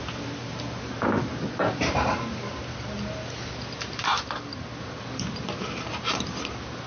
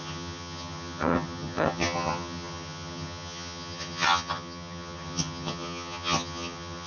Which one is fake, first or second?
second